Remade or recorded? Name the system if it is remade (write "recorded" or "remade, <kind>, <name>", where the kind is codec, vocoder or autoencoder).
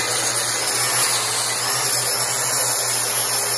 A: recorded